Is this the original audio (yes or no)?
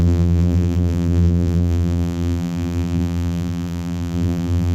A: no